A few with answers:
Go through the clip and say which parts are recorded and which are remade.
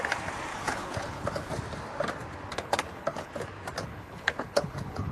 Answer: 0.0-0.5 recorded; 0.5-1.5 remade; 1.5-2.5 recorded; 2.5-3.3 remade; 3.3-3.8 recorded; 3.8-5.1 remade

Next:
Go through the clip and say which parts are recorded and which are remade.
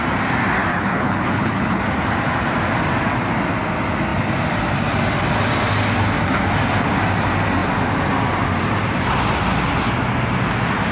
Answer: 0.0-0.7 recorded; 0.7-1.8 remade; 1.8-10.9 recorded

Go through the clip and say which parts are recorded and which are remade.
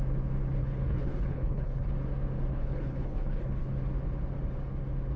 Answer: 0.0-0.6 recorded; 0.6-1.9 remade; 1.9-2.5 recorded; 2.5-3.7 remade; 3.7-5.2 recorded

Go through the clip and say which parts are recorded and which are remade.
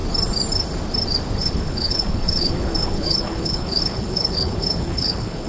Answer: 0.0-1.4 recorded; 1.4-5.5 remade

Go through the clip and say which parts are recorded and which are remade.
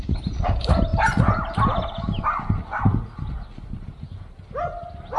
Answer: 0.0-5.2 recorded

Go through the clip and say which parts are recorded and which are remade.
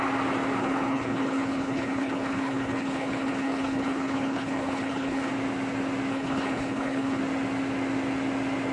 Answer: 0.0-0.6 recorded; 0.6-5.3 remade; 5.3-6.1 recorded; 6.1-7.2 remade; 7.2-8.7 recorded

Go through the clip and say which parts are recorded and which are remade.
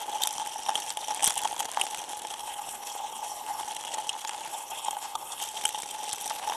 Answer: 0.0-2.4 recorded; 2.4-3.6 remade; 3.6-4.5 recorded; 4.5-5.4 remade; 5.4-6.6 recorded